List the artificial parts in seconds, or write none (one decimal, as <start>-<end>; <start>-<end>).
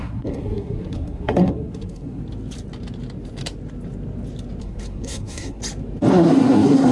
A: 0.0-2.2; 4.6-5.6; 6.1-6.9